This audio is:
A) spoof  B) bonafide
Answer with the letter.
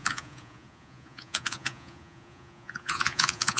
A